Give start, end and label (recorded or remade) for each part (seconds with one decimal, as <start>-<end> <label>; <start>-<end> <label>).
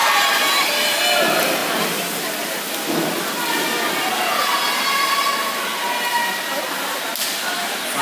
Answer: 0.0-8.0 recorded